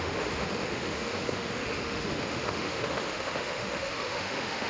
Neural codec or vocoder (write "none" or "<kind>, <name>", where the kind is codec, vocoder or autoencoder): autoencoder, DAC-VAE